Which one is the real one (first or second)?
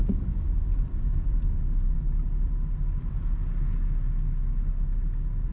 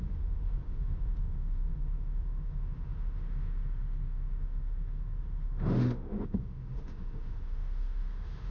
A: first